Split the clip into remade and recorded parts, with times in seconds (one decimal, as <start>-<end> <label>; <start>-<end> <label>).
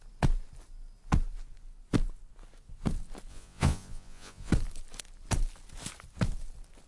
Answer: 0.0-3.3 recorded; 3.3-4.5 remade; 4.5-6.9 recorded